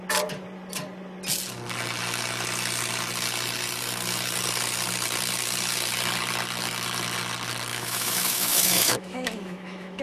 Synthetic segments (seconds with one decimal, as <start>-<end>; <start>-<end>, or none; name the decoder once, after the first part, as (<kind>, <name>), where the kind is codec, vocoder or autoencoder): 7.7-10.0 (autoencoder, DAC-VAE)